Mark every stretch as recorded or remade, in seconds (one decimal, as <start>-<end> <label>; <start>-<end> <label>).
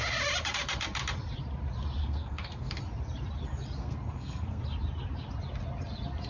0.0-2.0 recorded; 2.0-2.8 remade; 2.8-3.8 recorded; 3.8-4.6 remade; 4.6-6.3 recorded